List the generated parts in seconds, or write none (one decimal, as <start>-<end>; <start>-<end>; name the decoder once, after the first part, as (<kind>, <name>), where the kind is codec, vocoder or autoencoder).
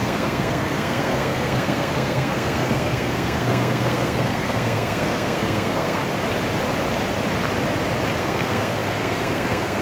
0.0-6.0 (codec, SNAC); 8.2-9.8